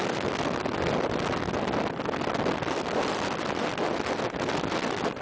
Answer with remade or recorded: recorded